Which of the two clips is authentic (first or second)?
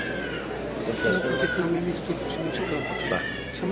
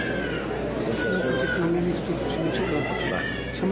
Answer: second